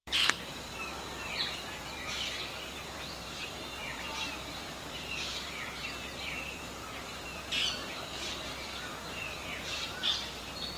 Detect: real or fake fake